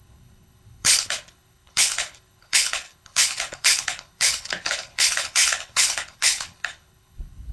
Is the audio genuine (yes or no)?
no